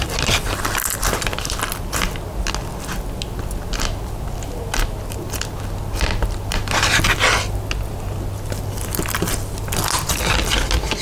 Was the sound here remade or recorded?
recorded